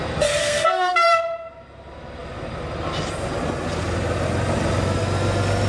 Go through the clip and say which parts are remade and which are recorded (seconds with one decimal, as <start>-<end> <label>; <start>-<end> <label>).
0.0-0.4 recorded; 0.4-1.2 remade; 1.2-5.7 recorded